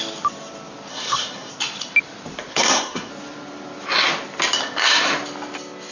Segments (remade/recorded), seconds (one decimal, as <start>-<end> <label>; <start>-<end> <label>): 0.0-0.9 recorded; 0.9-1.5 remade; 1.5-2.5 recorded; 2.5-3.1 remade; 3.1-5.9 recorded